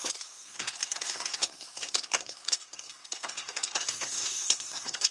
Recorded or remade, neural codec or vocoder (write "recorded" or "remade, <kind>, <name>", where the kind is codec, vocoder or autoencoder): remade, codec, SNAC